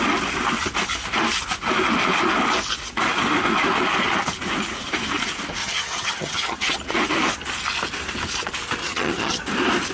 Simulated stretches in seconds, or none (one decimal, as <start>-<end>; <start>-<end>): 5.6-6.7; 8.8-9.4